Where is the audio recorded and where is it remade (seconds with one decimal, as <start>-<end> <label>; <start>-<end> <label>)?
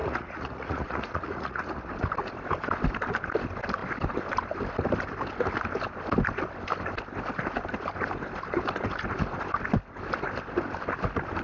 0.0-1.9 remade; 1.9-11.4 recorded